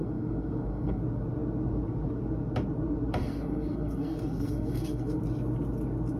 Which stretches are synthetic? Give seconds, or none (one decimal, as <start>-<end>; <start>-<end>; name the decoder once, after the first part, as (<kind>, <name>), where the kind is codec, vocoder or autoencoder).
0.0-1.0 (codec, SNAC); 3.2-5.2